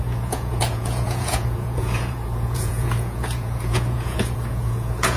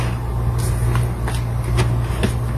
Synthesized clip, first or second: first